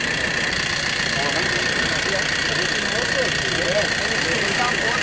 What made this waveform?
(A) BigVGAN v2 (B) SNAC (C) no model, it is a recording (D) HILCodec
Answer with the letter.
C